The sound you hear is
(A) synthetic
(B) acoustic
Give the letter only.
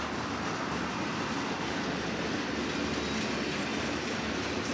B